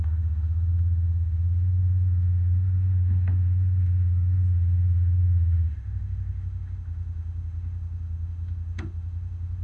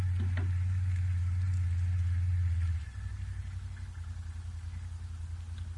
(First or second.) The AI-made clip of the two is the first